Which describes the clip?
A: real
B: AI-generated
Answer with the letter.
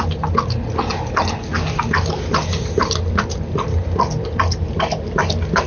A